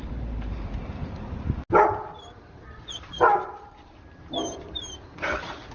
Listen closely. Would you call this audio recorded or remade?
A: recorded